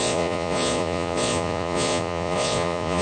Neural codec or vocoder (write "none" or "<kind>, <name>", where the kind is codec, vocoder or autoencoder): vocoder, Vocos